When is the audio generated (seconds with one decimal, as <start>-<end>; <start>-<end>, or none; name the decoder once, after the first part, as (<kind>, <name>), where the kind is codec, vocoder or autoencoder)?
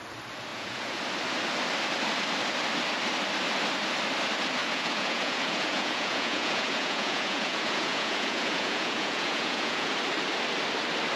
0.5-1.0 (vocoder, Vocos); 4.6-9.9